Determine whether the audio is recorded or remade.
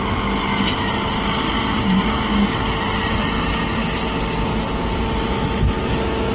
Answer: recorded